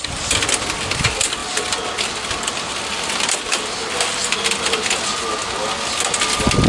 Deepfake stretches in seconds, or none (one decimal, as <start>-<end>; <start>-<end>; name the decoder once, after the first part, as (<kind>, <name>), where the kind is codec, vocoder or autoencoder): none